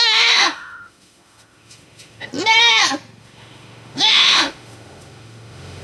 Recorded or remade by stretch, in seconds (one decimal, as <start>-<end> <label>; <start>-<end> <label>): 0.0-2.3 remade; 2.3-3.2 recorded; 3.2-5.8 remade